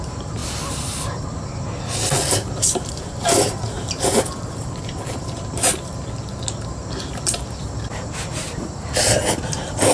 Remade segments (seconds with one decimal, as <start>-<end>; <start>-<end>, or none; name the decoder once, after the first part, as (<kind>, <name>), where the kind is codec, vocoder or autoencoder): 0.0-0.4 (vocoder, BigVGAN v2); 2.3-5.9; 7.6-9.9